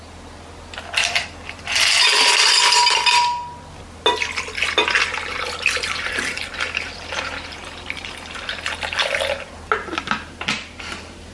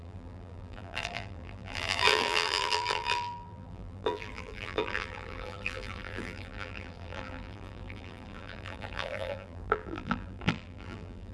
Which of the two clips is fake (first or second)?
second